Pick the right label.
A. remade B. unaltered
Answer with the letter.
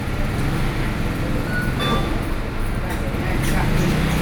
B